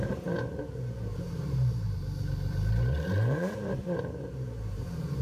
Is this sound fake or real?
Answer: fake